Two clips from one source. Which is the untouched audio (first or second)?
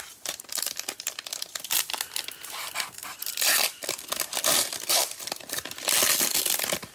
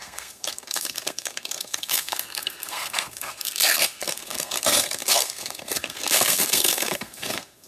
first